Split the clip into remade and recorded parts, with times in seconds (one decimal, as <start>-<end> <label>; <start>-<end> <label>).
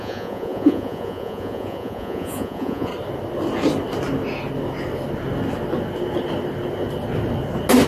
0.0-2.9 remade; 2.9-7.9 recorded